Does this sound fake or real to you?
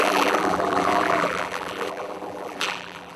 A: fake